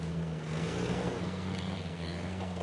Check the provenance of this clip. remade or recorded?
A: remade